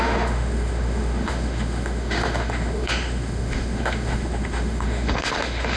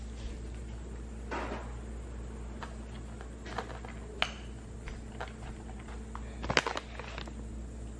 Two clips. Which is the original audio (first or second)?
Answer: second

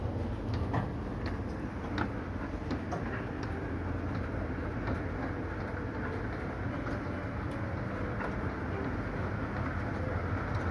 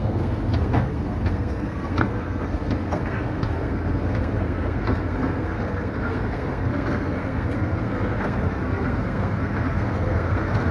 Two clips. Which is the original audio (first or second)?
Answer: first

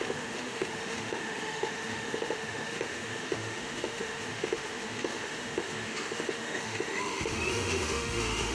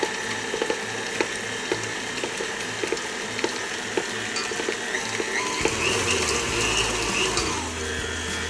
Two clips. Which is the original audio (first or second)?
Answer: second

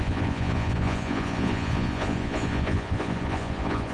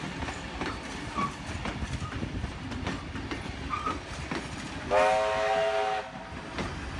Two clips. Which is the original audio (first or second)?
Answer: second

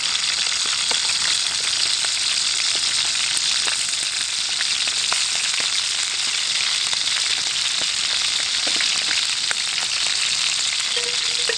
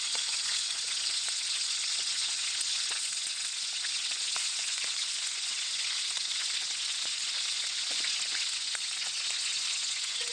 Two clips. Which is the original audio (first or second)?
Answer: first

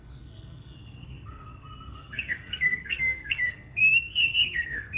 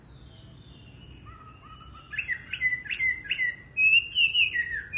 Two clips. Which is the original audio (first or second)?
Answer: second